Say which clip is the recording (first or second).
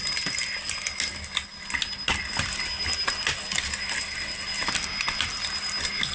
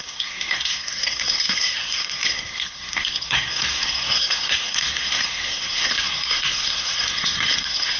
first